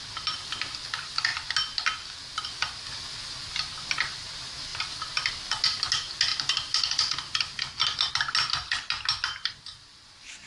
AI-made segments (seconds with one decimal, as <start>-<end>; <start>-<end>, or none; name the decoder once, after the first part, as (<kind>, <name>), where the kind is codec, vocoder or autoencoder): none